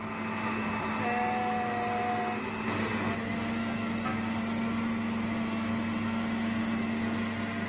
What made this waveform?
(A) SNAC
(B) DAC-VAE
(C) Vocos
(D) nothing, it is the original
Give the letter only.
D